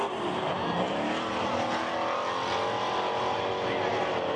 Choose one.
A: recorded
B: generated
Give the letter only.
A